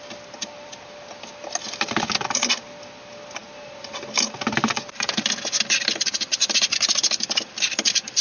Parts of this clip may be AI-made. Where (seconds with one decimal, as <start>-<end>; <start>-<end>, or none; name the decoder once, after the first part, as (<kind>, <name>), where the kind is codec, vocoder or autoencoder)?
none